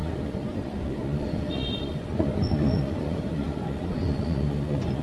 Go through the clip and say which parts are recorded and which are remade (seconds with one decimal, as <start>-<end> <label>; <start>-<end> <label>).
0.0-5.0 remade